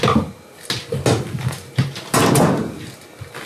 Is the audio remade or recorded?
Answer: recorded